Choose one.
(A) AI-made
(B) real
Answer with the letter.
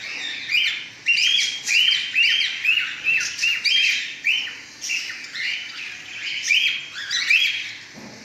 B